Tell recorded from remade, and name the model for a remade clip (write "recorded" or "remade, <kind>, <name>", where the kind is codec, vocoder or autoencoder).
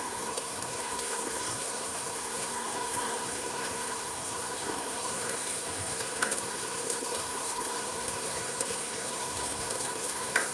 remade, codec, SNAC